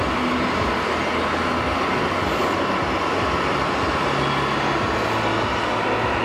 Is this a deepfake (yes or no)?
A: no